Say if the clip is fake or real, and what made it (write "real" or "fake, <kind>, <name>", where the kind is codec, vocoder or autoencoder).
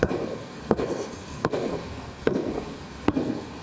fake, codec, SNAC